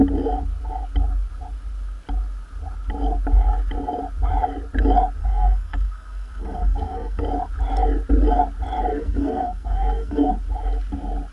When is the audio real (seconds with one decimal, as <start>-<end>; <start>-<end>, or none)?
0.0-5.2; 7.2-8.9; 10.3-11.3